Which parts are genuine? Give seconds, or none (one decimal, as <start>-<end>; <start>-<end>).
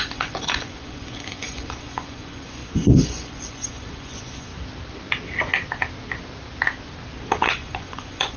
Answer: 4.5-7.5